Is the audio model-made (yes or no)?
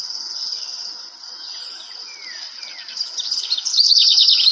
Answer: no